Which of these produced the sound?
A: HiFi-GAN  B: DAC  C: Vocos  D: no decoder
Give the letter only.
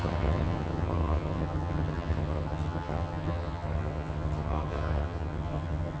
A